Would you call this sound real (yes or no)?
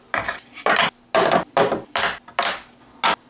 yes